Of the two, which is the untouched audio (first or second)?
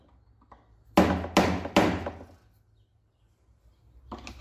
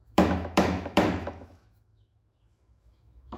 first